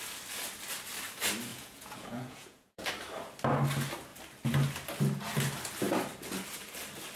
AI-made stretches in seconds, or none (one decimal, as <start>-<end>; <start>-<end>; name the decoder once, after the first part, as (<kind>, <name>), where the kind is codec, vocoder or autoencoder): 1.5-2.9 (vocoder, Vocos)